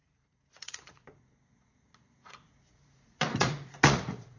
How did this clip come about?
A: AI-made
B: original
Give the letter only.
A